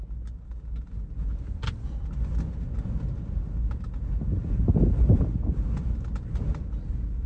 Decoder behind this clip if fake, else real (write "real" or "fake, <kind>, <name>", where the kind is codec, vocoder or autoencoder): real